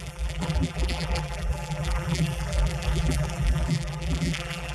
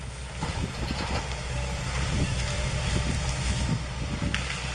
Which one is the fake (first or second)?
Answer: first